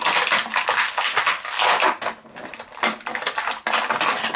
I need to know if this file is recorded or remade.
recorded